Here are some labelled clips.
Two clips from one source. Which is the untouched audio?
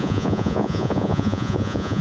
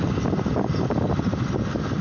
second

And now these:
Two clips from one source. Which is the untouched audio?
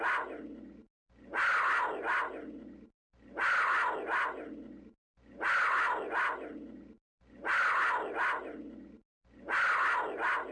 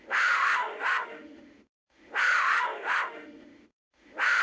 first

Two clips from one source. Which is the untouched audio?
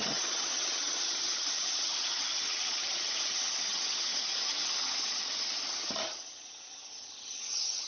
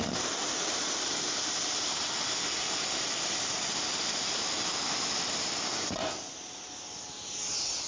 second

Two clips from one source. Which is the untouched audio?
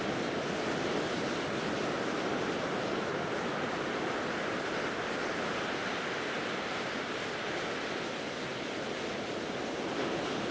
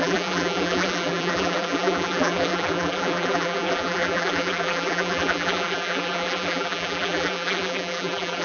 first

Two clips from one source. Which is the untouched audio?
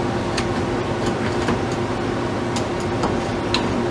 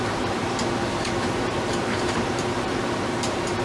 first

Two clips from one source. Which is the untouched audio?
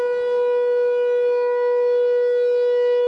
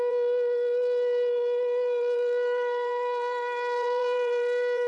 first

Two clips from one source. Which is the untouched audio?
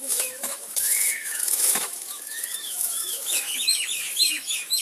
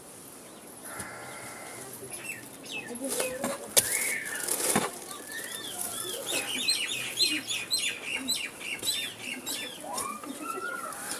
second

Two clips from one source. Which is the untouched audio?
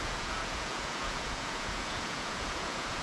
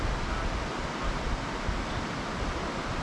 second